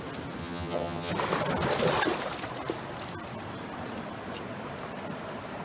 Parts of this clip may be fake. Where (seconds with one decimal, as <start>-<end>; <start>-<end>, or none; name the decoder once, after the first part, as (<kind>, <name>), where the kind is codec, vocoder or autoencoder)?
0.4-1.1 (vocoder, HiFi-GAN)

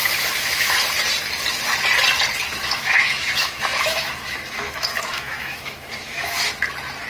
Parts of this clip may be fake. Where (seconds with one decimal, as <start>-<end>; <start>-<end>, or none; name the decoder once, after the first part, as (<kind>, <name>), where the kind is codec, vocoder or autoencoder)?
0.0-0.7 (autoencoder, DAC-VAE); 2.5-6.4

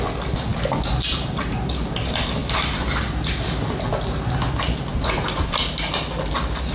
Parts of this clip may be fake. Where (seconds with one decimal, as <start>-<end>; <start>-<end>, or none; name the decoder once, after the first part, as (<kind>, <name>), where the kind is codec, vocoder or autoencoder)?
none

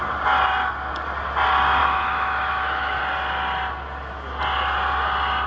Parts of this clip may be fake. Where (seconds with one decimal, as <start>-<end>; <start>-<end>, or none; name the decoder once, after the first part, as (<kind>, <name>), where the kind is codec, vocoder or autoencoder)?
1.8-3.0 (autoencoder, DAC-VAE)